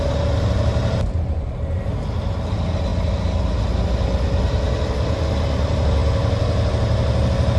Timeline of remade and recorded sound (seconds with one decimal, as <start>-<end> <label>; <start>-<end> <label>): 0.0-7.6 recorded